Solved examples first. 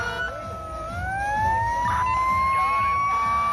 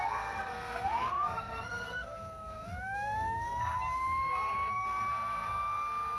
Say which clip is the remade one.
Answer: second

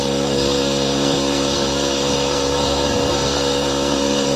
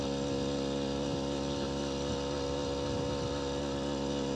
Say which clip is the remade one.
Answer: first